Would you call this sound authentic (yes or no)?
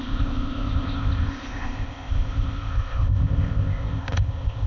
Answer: no